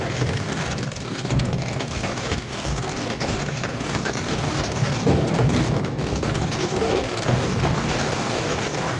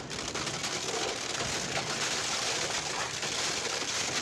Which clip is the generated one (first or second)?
first